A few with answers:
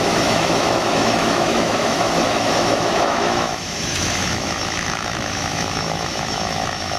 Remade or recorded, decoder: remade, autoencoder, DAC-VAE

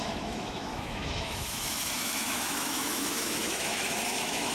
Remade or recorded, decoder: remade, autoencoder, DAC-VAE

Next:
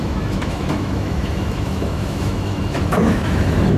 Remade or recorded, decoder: remade, autoencoder, DAC-VAE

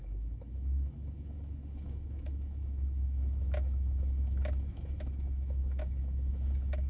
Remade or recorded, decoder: remade, autoencoder, DAC-VAE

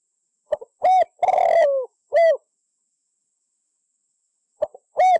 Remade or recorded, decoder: remade, autoencoder, DAC-VAE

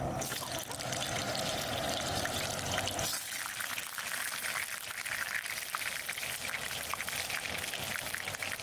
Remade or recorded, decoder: recorded